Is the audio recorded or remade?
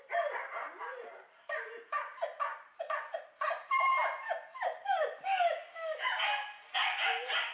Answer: remade